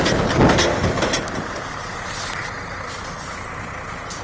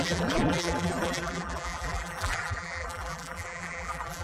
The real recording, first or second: first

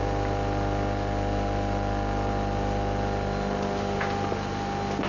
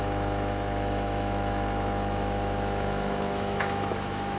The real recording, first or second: first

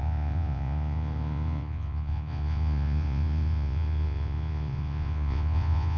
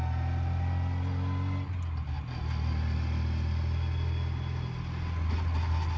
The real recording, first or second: second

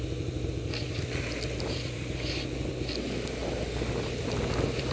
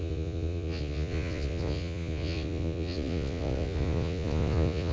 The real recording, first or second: first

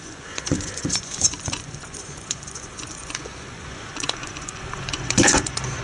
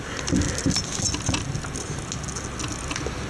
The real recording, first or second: second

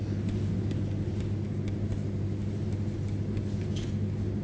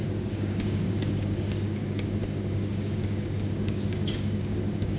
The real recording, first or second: first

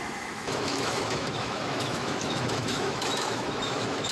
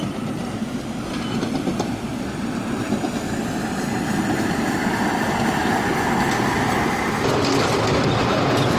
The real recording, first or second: second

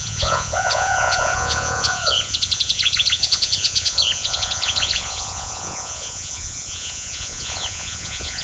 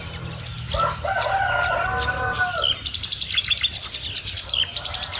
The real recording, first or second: second